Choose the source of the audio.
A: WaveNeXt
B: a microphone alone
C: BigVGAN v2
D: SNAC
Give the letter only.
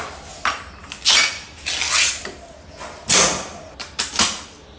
B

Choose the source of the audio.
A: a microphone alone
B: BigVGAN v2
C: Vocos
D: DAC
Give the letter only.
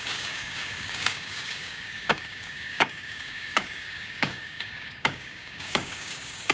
D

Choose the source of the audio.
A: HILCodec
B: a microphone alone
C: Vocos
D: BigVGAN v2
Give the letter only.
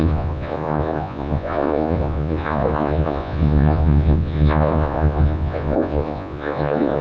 C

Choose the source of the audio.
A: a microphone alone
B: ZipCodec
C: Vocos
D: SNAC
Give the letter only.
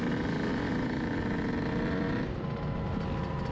A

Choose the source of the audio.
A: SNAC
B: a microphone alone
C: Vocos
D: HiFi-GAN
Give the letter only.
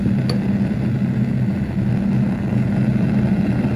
B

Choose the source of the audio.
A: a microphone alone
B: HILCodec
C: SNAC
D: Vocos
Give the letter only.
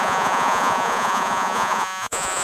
D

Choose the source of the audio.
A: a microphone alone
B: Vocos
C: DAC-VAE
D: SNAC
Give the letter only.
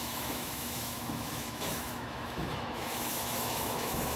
C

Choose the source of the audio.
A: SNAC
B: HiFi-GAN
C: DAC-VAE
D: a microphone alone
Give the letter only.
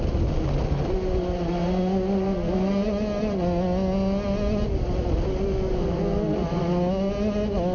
D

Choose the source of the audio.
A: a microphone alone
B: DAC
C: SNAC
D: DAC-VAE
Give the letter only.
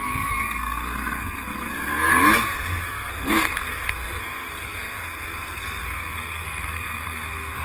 C